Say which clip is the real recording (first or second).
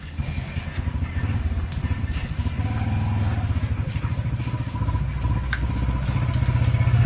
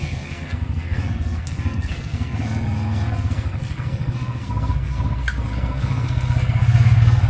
first